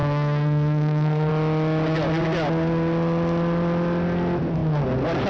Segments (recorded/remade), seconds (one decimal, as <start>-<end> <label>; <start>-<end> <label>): 0.0-1.3 remade; 1.3-5.3 recorded